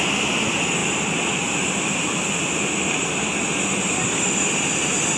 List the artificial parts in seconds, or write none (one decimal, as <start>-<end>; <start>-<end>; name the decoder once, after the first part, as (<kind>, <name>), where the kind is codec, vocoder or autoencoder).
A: none